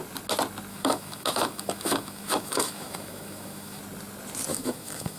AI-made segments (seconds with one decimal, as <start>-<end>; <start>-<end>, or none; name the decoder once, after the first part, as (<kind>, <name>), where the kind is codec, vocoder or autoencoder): 0.7-3.8 (autoencoder, DAC-VAE); 4.5-5.2